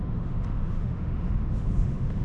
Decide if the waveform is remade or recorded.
remade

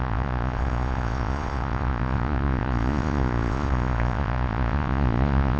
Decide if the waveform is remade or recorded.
remade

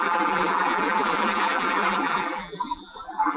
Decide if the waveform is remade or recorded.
remade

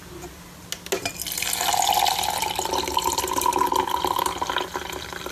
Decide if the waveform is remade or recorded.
recorded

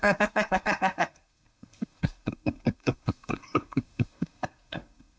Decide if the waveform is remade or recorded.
remade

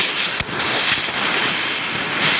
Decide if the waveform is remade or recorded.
recorded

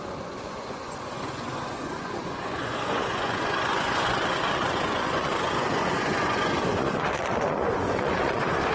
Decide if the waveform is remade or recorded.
remade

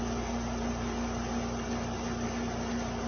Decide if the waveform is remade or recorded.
recorded